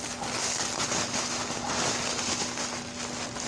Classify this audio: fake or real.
real